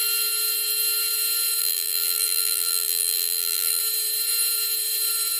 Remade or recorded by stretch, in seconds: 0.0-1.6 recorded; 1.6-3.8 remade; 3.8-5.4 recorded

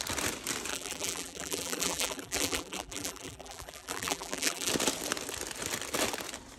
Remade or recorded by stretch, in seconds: 0.0-0.7 recorded; 0.7-4.7 remade; 4.7-6.6 recorded

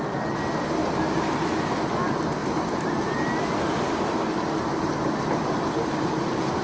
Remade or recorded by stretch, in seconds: 0.0-0.8 recorded; 0.8-1.3 remade; 1.3-6.6 recorded

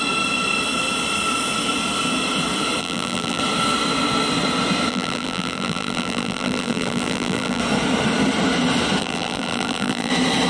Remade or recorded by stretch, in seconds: 0.0-2.8 recorded; 2.8-3.4 remade; 3.4-4.9 recorded; 4.9-7.6 remade; 7.6-9.0 recorded; 9.0-10.1 remade; 10.1-10.5 recorded